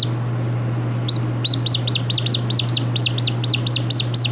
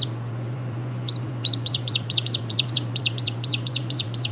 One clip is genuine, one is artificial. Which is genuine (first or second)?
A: first